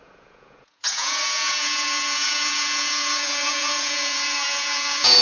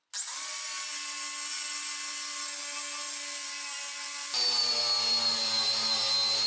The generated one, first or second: first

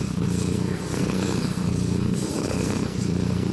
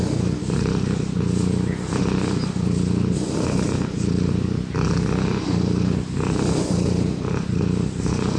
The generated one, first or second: first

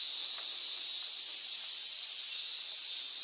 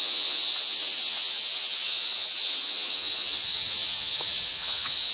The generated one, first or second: second